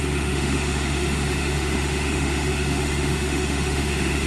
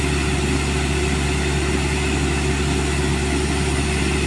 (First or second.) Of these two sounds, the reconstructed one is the first